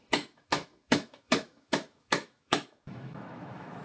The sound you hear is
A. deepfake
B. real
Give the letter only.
A